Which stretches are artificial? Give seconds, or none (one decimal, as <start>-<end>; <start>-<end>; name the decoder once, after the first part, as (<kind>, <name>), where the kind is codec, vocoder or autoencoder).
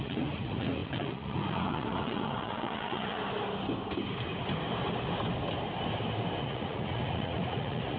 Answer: 0.0-3.2 (vocoder, Vocos); 6.4-8.0